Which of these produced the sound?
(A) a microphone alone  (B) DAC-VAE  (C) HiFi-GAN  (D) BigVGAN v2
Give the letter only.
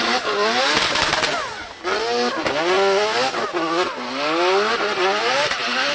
A